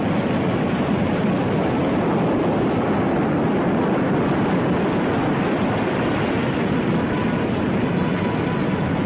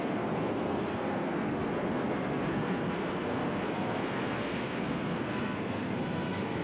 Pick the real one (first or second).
first